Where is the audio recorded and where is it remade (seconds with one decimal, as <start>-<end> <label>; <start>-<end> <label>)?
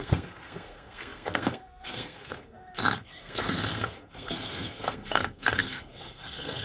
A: 0.0-6.6 remade